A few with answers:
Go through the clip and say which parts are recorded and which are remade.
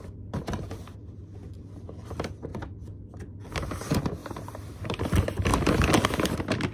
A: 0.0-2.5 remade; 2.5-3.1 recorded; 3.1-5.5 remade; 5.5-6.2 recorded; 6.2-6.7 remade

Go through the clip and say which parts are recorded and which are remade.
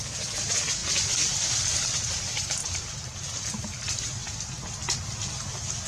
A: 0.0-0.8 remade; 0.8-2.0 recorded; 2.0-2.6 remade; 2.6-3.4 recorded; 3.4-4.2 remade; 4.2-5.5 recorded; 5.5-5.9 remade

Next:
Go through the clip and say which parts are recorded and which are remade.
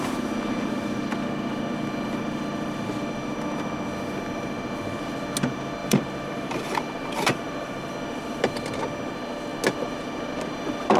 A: 0.0-5.8 recorded; 5.8-7.9 remade; 7.9-11.0 recorded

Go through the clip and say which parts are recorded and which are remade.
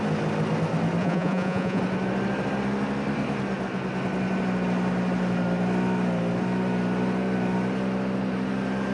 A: 0.0-1.0 recorded; 1.0-1.8 remade; 1.8-8.9 recorded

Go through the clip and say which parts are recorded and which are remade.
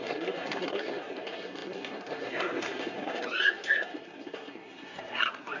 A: 0.0-5.6 remade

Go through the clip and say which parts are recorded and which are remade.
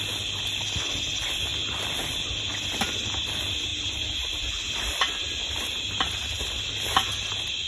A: 0.0-3.7 recorded; 3.7-4.3 remade; 4.3-7.7 recorded